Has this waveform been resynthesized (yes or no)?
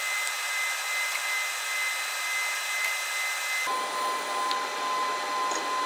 no